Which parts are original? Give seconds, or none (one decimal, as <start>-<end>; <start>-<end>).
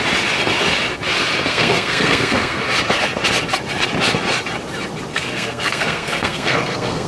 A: 0.0-1.5; 2.6-5.1